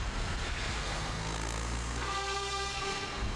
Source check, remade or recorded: remade